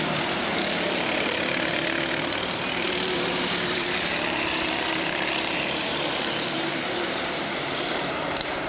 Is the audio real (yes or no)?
no